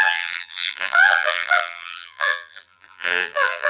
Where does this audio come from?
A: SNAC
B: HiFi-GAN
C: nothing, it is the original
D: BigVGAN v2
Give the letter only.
D